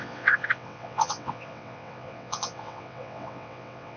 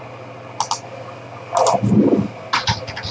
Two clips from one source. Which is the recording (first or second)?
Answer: second